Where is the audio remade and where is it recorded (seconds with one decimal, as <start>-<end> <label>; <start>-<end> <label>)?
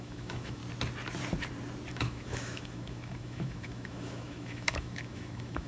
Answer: 0.0-0.6 remade; 0.6-1.9 recorded; 1.9-5.7 remade